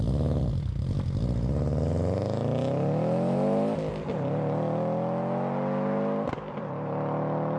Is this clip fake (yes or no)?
no